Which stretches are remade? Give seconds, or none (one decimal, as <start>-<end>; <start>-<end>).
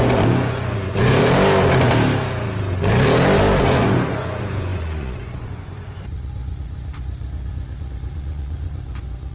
0.0-1.2; 3.6-9.3